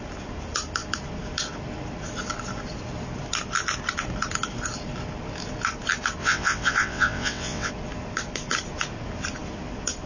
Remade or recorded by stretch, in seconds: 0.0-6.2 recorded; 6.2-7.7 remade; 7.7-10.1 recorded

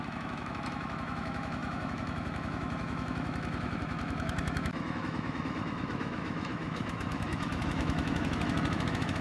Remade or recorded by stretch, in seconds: 0.0-9.2 remade

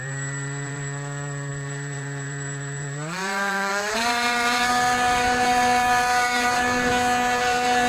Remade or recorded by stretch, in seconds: 0.0-6.9 remade; 6.9-7.4 recorded; 7.4-7.9 remade

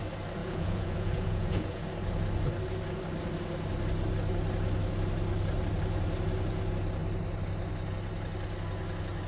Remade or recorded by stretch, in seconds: 0.0-0.4 recorded; 0.4-1.8 remade; 1.8-9.3 recorded